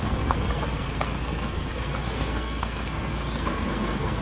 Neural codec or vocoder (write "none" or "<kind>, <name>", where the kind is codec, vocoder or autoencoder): codec, SNAC